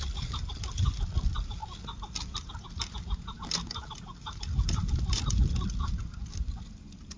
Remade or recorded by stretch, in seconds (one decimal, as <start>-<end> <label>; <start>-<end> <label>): 0.0-7.2 recorded